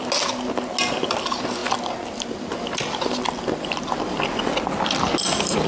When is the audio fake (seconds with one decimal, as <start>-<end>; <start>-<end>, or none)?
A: none